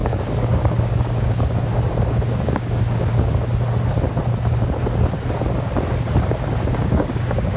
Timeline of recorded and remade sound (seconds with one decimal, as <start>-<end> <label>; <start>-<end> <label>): 0.0-3.3 remade; 3.3-6.7 recorded; 6.7-7.6 remade